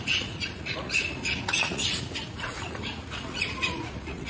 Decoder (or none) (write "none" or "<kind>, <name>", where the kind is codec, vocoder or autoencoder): vocoder, Vocos